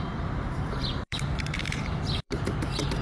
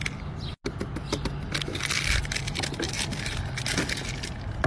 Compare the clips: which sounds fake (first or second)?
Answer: first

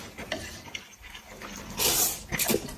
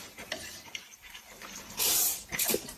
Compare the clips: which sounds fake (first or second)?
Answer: second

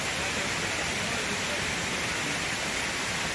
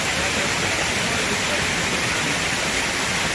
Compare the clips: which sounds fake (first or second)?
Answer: second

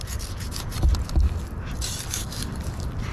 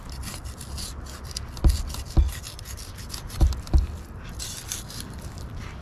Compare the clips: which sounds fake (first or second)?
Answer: first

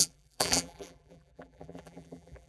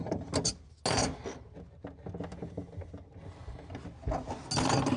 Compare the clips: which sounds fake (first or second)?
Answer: first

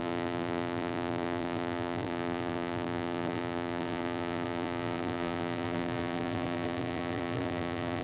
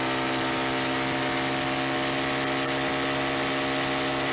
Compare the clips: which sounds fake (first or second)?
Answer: first